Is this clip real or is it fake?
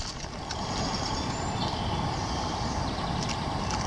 real